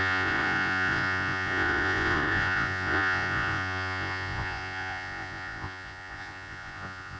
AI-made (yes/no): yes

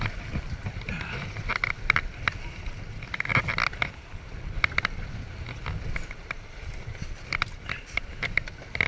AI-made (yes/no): no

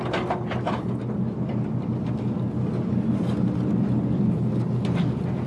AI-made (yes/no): no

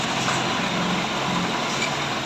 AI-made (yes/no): no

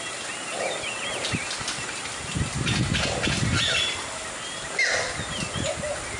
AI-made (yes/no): no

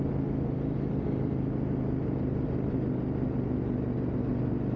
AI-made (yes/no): no